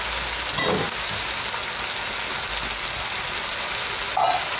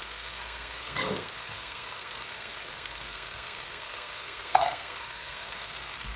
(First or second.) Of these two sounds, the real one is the first